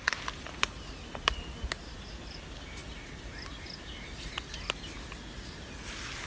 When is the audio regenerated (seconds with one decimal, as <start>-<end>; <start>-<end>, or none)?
none